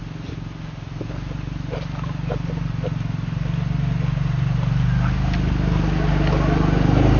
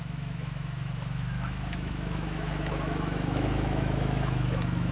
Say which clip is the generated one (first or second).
second